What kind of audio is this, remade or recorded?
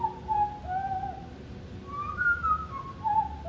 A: recorded